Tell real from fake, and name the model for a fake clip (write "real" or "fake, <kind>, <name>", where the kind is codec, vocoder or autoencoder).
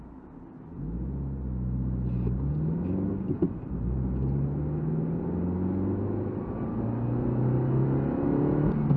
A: real